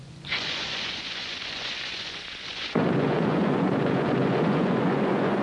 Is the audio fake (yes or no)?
yes